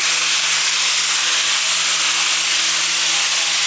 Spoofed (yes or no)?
no